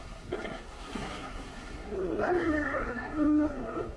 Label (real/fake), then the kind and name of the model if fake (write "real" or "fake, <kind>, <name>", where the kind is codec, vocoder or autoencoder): fake, codec, SNAC